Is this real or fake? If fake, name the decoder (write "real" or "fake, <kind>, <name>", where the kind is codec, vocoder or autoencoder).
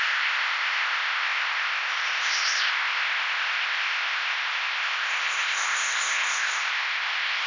fake, codec, ZipCodec